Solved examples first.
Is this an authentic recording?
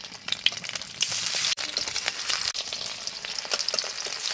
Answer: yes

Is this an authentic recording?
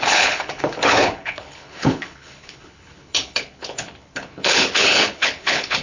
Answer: no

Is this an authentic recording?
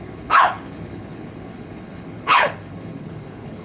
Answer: no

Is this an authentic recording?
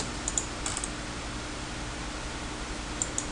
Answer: yes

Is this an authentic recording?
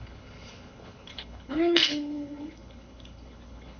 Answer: no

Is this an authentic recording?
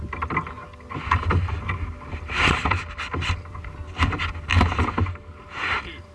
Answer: yes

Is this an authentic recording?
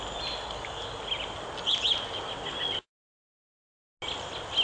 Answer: yes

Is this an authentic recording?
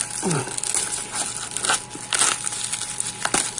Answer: yes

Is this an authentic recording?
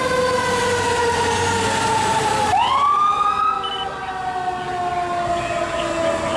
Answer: yes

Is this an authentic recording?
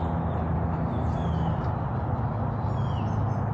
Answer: yes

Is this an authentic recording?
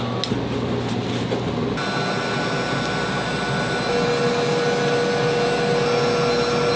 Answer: yes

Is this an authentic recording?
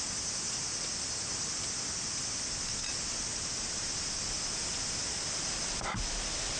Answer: yes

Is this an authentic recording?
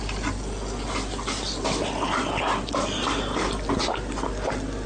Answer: yes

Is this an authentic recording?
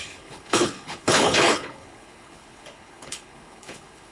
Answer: no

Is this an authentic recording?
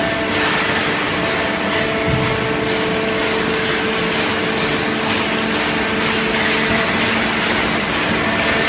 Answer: yes